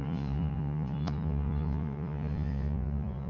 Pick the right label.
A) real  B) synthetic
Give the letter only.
B